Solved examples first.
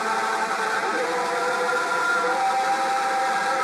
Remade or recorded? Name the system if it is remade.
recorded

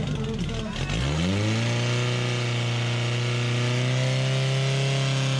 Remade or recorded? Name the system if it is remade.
recorded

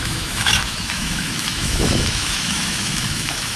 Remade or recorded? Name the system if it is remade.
remade, autoencoder, DAC-VAE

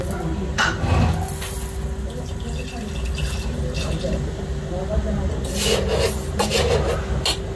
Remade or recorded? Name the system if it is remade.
recorded